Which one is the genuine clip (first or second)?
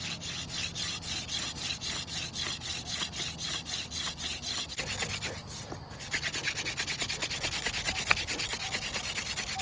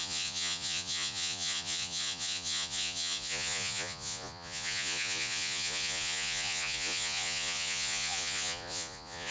first